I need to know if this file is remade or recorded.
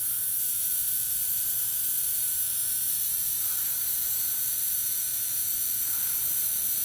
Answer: remade